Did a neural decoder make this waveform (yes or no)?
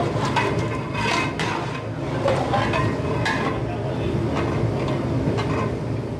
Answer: no